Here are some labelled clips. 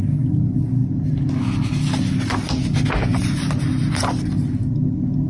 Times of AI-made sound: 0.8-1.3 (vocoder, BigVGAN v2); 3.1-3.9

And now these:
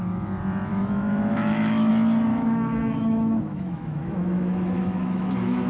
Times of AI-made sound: 0.7-1.9 (autoencoder, DAC-VAE); 2.3-5.7

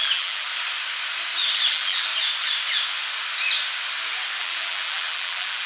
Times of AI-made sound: 0.0-0.5 (vocoder, BigVGAN v2); 1.7-2.1; 4.4-5.7